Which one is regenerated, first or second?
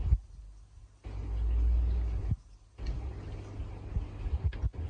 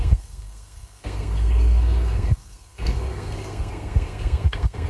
second